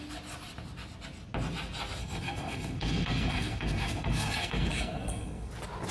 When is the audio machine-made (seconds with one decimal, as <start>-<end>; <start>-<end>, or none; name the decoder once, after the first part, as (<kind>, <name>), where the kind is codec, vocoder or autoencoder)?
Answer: 2.0-5.5 (codec, SNAC)